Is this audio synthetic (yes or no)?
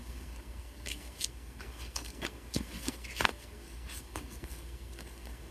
yes